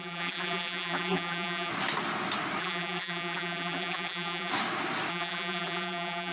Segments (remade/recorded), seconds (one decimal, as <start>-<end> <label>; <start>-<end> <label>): 0.0-1.7 remade; 1.7-2.6 recorded; 2.6-4.5 remade; 4.5-5.1 recorded; 5.1-6.3 remade